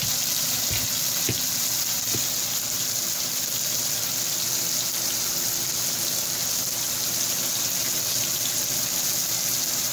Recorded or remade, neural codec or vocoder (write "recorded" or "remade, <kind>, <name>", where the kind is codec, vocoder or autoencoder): recorded